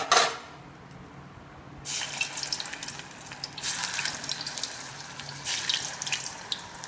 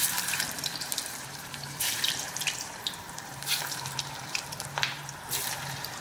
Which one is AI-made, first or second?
second